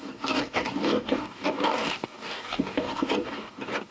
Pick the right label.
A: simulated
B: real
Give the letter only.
A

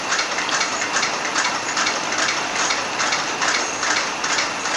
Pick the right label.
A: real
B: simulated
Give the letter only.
B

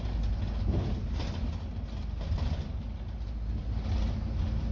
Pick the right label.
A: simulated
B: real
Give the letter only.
B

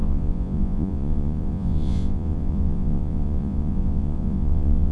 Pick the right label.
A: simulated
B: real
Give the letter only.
A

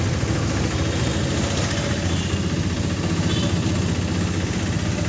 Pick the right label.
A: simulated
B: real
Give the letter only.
B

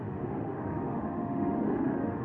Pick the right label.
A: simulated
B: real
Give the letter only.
A